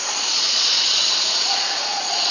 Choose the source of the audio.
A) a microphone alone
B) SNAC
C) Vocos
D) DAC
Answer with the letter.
C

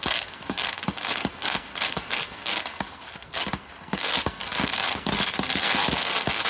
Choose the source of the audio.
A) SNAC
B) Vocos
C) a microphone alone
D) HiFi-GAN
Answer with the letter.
A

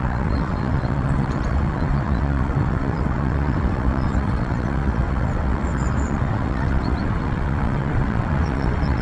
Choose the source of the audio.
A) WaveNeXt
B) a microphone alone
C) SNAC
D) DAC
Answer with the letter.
A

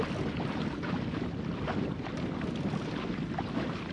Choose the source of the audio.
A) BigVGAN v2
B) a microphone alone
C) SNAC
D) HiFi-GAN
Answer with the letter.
B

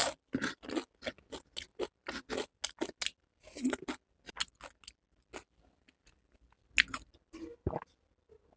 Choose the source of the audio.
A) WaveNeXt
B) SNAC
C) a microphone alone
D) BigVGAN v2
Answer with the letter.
C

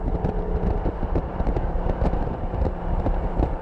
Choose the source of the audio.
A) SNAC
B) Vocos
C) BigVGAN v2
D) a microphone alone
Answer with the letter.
C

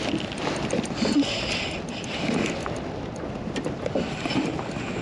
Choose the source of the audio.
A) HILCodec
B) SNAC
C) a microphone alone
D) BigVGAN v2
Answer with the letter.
C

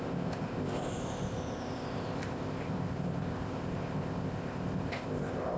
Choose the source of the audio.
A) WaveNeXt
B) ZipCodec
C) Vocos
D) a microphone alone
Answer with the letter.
B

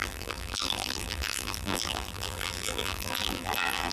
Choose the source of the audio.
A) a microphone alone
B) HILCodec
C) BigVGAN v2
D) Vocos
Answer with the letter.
C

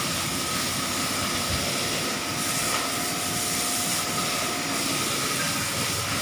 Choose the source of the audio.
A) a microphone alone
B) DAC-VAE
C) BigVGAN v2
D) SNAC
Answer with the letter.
A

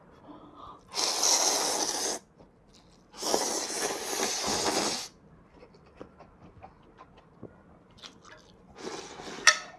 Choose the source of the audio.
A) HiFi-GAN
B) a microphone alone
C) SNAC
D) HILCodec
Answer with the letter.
B